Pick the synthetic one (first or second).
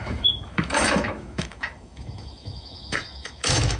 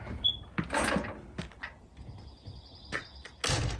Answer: first